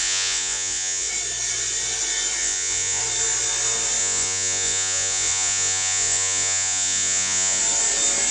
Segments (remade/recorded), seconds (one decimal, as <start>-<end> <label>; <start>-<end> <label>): 0.0-1.1 remade; 1.1-2.4 recorded; 2.4-3.0 remade; 3.0-4.0 recorded; 4.0-7.6 remade; 7.6-8.3 recorded